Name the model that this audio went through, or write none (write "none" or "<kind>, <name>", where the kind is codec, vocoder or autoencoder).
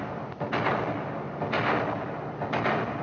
none